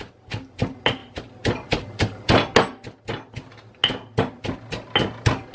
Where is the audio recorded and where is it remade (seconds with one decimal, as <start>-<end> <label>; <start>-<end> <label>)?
0.0-5.5 recorded